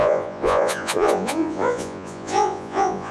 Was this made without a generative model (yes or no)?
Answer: no